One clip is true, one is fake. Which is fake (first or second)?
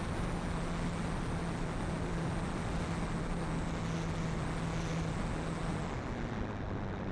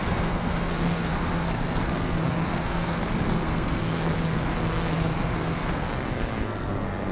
second